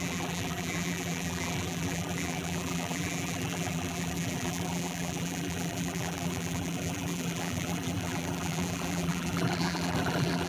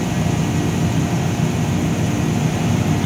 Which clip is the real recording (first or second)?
second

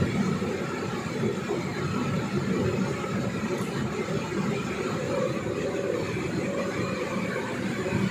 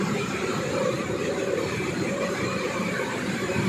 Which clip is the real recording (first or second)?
first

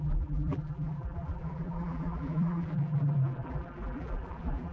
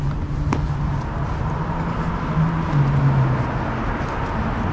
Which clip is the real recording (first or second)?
second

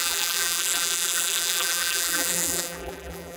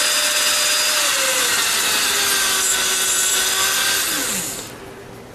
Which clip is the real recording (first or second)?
second